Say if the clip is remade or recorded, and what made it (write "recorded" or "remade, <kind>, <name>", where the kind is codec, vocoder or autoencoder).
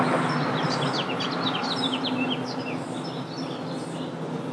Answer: recorded